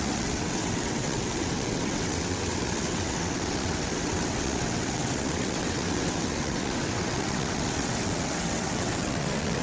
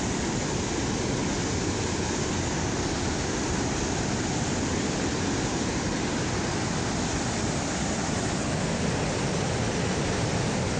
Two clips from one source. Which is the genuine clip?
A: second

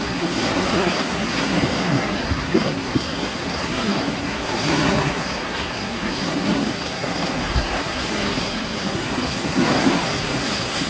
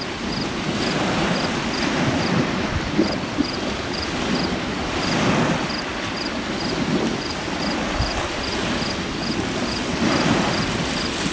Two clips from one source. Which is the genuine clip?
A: second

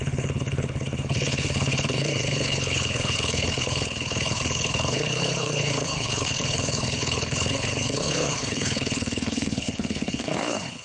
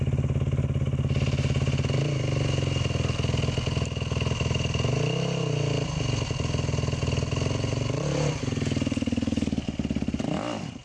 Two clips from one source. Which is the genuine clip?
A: second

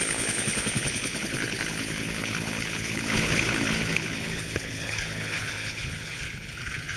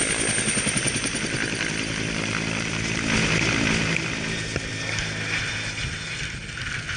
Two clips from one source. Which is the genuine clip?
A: second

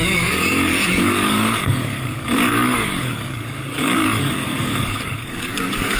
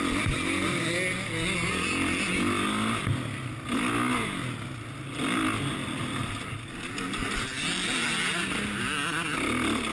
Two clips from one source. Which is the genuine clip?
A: second